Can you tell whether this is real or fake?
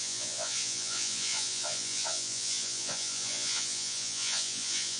fake